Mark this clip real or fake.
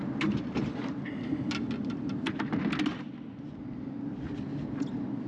real